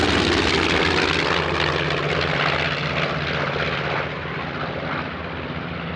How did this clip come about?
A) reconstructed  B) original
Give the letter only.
B